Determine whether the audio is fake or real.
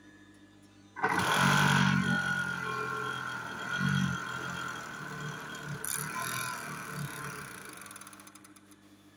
real